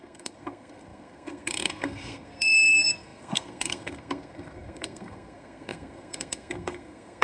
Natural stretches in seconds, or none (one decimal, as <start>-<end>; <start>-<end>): none